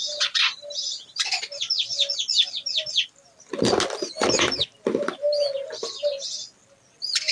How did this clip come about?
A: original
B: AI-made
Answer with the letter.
A